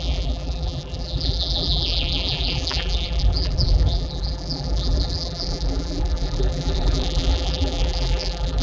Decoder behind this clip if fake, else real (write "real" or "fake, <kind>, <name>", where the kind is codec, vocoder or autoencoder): fake, vocoder, BigVGAN v2